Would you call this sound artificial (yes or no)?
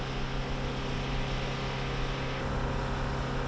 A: no